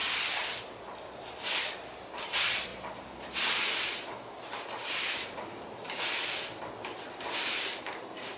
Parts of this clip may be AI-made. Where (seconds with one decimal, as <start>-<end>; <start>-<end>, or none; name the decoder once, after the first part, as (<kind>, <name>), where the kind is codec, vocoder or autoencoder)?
0.6-2.7 (vocoder, BigVGAN v2); 7.1-8.4